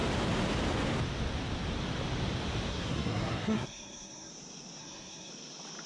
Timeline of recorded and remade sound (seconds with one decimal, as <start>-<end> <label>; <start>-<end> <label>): 0.0-2.7 recorded; 2.7-4.3 remade; 4.3-4.8 recorded; 4.8-5.3 remade; 5.3-5.9 recorded